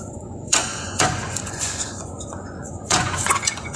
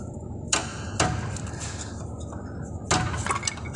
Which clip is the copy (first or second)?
first